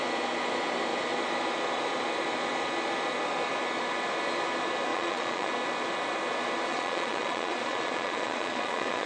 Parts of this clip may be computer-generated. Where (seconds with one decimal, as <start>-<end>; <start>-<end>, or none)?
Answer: 4.9-5.5; 6.7-9.1